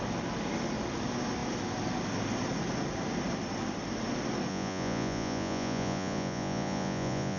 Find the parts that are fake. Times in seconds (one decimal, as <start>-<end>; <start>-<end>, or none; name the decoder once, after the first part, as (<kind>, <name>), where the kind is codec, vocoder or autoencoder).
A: 4.5-7.4 (vocoder, Vocos)